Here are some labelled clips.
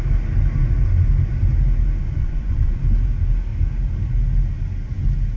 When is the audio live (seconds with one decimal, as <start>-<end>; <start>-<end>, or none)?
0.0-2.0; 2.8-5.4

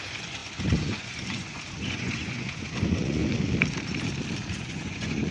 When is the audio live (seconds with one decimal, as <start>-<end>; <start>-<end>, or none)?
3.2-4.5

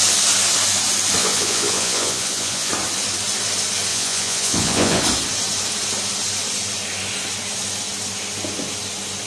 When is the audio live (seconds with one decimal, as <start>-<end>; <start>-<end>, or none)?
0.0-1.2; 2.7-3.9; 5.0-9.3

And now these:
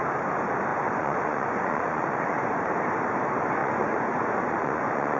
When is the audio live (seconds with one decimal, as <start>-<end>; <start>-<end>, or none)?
0.0-0.7; 2.7-3.6